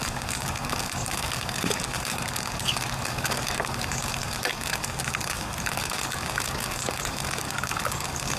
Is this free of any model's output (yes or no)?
no